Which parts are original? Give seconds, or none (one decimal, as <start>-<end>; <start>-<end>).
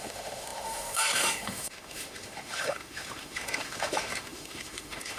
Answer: none